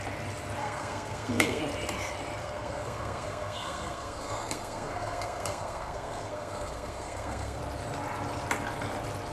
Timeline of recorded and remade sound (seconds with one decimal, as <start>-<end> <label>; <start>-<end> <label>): 0.0-0.6 recorded; 0.6-1.6 remade; 1.6-2.4 recorded; 2.4-7.6 remade; 7.6-9.3 recorded